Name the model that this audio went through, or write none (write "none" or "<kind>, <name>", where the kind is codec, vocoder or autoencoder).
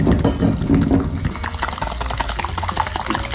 none